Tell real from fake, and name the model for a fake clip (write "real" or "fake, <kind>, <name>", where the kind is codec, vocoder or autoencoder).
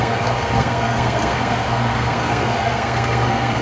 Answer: fake, codec, SNAC